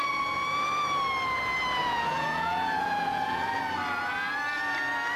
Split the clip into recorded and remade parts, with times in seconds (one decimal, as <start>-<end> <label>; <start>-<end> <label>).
0.0-1.8 recorded; 1.8-3.6 remade; 3.6-5.2 recorded